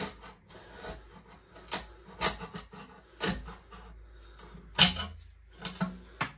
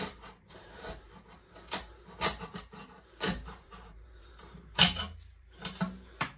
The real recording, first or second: first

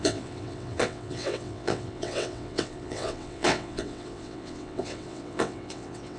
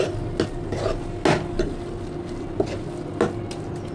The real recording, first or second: second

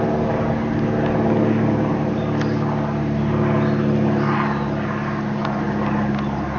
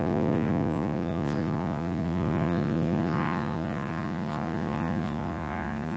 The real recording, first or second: first